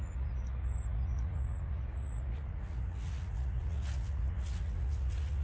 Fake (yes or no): yes